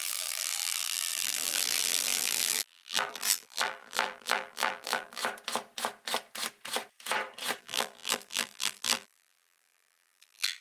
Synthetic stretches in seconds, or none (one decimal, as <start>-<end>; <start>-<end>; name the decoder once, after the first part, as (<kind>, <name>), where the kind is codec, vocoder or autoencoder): 0.0-5.2 (vocoder, BigVGAN v2); 7.6-10.6